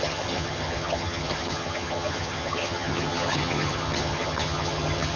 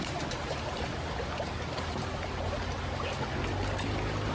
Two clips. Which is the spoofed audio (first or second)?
first